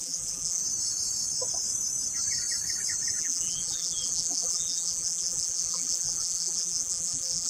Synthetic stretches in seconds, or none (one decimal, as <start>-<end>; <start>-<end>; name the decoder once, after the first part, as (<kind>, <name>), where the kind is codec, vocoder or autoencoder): 0.0-0.6 (vocoder, BigVGAN v2); 3.2-7.5